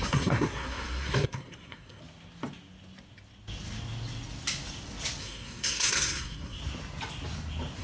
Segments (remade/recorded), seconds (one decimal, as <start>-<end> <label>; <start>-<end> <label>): 0.0-2.0 remade; 2.0-5.2 recorded; 5.2-6.6 remade; 6.6-7.8 recorded